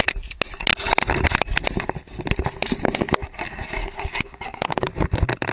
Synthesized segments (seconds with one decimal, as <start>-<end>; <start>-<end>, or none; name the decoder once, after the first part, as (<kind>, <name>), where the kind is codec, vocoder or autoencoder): 3.8-4.9 (codec, DAC)

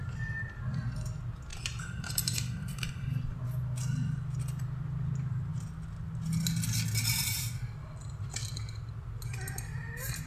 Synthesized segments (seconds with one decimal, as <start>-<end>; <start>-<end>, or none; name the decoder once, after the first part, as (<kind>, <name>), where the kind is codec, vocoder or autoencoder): 1.5-3.4 (vocoder, BigVGAN v2)

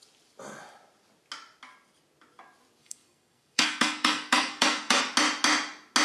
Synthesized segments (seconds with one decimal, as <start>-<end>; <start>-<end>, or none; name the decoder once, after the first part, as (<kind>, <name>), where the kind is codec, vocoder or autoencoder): 2.8-5.0 (codec, SNAC)

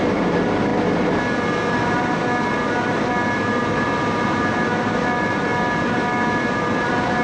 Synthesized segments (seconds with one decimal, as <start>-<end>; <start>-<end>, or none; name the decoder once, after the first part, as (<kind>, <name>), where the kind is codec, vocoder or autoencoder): 0.0-0.7 (vocoder, BigVGAN v2); 3.1-7.2

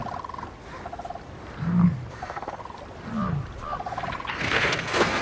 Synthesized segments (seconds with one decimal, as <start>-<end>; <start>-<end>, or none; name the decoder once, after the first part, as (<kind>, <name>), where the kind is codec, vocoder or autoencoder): 2.1-2.6 (codec, SNAC); 4.3-5.2

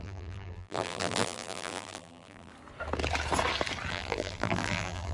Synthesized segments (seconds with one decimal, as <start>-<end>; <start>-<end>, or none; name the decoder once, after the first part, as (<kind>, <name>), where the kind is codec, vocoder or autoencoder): 0.0-2.5 (vocoder, BigVGAN v2); 3.9-5.1